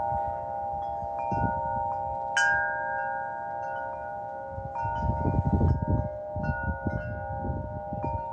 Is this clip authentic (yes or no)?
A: yes